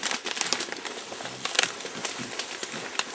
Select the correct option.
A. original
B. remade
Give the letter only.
A